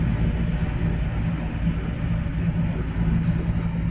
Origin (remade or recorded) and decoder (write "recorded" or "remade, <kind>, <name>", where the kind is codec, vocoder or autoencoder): recorded